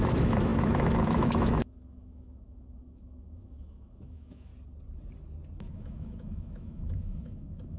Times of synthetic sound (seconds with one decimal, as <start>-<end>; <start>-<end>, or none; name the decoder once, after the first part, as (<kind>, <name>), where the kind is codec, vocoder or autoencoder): 0.0-4.5 (autoencoder, DAC-VAE); 5.6-7.8